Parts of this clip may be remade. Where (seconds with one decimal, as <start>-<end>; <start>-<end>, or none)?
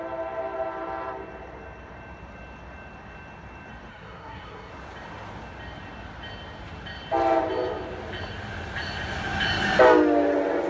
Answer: 3.9-4.7